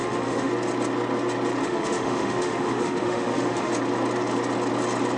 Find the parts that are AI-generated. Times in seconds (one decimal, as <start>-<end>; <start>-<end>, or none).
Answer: 0.0-0.5; 1.6-3.7